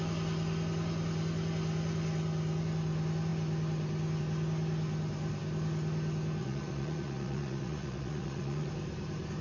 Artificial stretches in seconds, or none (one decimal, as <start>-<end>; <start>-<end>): 6.4-8.7